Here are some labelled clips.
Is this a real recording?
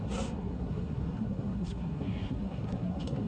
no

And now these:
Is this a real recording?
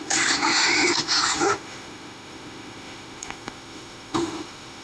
no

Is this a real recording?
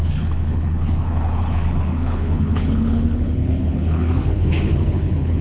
no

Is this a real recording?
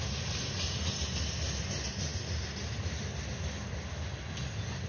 yes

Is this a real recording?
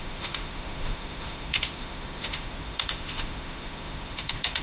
no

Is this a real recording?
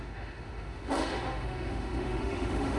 no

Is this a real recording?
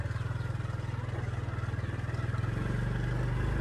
yes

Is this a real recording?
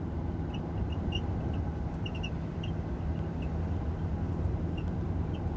yes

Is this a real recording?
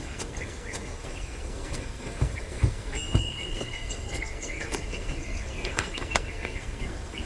no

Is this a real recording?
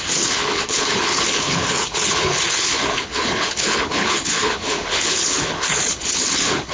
no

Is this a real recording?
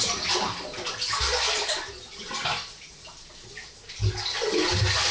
yes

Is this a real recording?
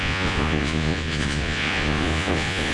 no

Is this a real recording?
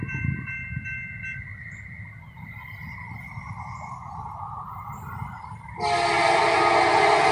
yes